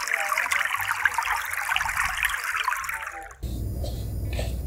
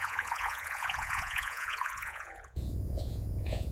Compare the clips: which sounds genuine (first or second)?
first